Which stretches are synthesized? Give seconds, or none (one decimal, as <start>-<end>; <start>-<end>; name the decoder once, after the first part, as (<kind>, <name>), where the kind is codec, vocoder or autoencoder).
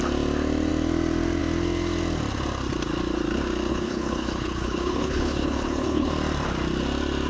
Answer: 3.7-6.1 (codec, HILCodec)